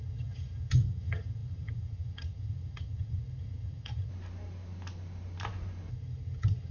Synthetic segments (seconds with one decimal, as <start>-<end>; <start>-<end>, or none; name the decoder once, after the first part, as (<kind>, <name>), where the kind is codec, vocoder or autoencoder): 0.0-4.1 (vocoder, HiFi-GAN); 5.9-6.7